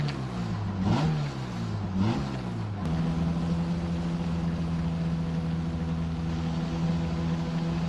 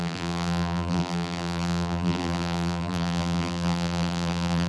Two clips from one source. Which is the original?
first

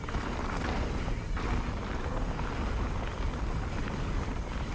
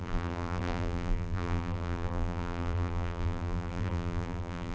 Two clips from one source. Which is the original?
first